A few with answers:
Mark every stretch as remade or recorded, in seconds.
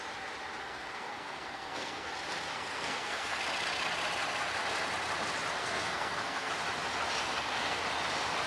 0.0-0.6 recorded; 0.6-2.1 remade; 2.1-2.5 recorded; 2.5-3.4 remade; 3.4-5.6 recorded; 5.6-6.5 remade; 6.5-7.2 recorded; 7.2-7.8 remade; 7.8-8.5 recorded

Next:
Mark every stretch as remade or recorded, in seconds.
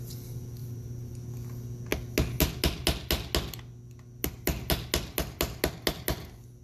0.0-0.6 recorded; 0.6-1.1 remade; 1.1-6.6 recorded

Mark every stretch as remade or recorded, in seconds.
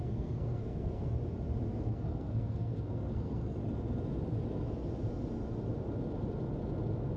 0.0-1.2 remade; 1.2-1.8 recorded; 1.8-3.6 remade; 3.6-7.2 recorded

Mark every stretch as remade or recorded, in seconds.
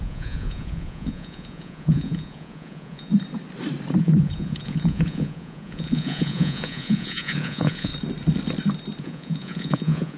0.0-3.1 remade; 3.1-4.0 recorded; 4.0-7.9 remade; 7.9-9.0 recorded; 9.0-10.2 remade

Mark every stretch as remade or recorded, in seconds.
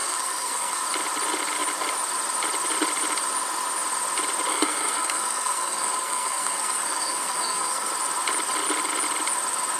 0.0-0.8 remade; 0.8-4.5 recorded; 4.5-7.9 remade; 7.9-9.8 recorded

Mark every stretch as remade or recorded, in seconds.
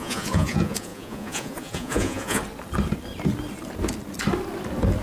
0.0-2.4 remade; 2.4-5.0 recorded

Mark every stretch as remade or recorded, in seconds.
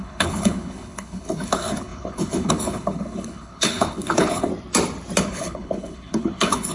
0.0-4.5 remade; 4.5-5.2 recorded; 5.2-6.7 remade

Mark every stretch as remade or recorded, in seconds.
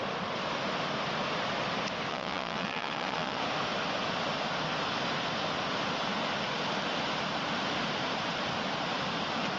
0.0-2.1 recorded; 2.1-3.4 remade; 3.4-9.6 recorded